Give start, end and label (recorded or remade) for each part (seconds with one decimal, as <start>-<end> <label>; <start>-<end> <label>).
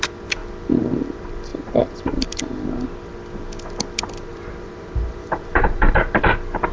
0.0-1.5 recorded; 1.5-2.4 remade; 2.4-4.3 recorded; 4.3-6.2 remade; 6.2-6.7 recorded